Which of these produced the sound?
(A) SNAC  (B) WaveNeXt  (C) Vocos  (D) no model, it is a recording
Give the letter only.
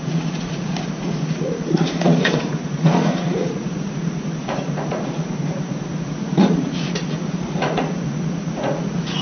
C